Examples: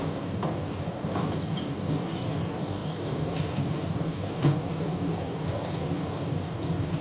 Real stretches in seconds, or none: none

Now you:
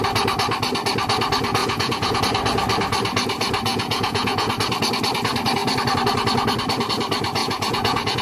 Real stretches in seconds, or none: 0.0-1.6; 2.2-3.7; 4.5-7.4